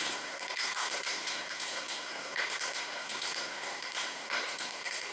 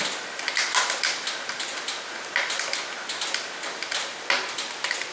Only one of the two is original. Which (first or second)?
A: second